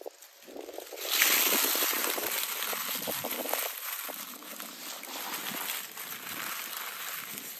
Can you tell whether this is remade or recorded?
recorded